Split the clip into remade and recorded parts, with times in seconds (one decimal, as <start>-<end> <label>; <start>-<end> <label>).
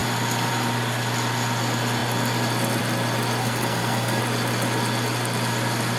0.0-3.4 recorded; 3.4-4.2 remade; 4.2-6.0 recorded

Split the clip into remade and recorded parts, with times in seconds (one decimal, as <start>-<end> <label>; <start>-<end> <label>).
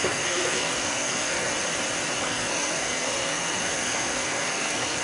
0.0-1.5 remade; 1.5-2.2 recorded; 2.2-5.0 remade